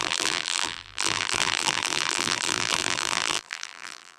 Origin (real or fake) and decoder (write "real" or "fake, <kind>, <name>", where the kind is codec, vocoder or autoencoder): fake, vocoder, BigVGAN v2